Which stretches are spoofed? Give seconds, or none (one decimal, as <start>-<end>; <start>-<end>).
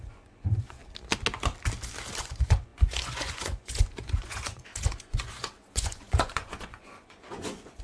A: 0.0-0.8; 2.2-7.8